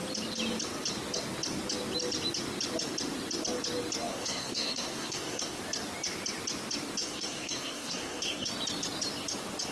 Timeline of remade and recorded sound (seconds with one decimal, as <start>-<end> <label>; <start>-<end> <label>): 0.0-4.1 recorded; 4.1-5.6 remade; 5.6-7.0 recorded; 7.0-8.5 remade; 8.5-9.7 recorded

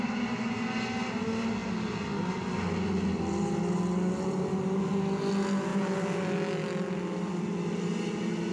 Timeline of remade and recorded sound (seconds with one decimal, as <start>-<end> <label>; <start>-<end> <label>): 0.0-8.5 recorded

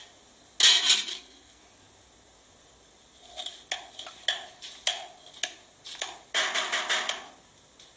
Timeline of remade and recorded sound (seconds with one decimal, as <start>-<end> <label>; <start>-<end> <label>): 0.0-1.1 recorded; 1.1-1.6 remade; 1.6-8.0 recorded